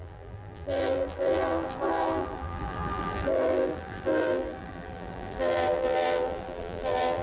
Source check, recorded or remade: remade